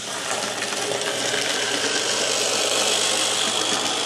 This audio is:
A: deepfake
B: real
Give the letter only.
B